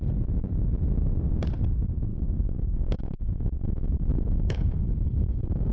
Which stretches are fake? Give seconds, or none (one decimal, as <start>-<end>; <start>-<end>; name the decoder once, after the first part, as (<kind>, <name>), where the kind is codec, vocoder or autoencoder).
2.1-5.7 (codec, DAC)